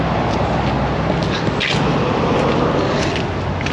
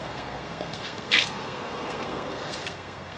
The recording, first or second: first